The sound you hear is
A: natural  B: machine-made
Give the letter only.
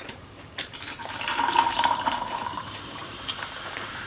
B